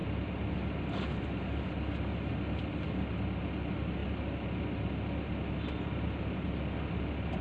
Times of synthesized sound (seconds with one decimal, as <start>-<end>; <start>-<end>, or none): none